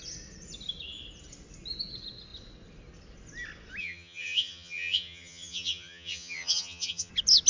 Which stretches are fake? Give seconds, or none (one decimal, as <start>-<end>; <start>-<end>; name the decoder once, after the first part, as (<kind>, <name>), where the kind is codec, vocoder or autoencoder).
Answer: 3.8-7.1 (vocoder, HiFi-GAN)